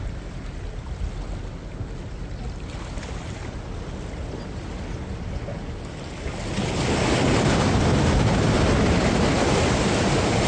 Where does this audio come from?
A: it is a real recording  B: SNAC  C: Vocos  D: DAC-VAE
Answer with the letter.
A